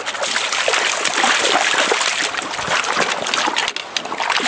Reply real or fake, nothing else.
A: real